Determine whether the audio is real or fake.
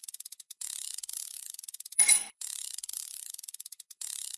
fake